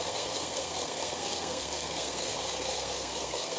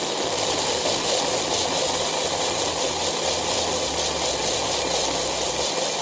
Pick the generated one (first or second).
first